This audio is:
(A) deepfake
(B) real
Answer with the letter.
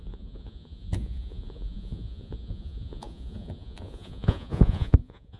A